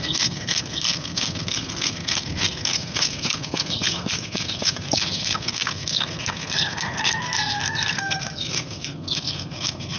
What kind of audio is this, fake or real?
fake